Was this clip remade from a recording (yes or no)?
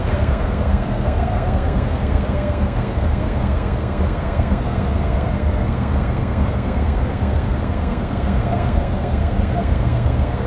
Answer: yes